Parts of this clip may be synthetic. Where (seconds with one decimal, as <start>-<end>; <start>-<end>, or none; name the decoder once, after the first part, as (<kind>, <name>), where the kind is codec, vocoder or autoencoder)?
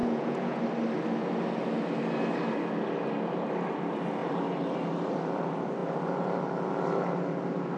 0.0-0.6 (vocoder, Vocos)